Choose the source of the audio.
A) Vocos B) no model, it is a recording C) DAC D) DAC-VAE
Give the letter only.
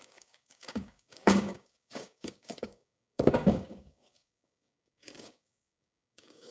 C